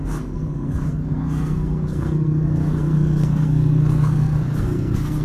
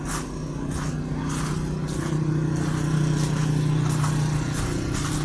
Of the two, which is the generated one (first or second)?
first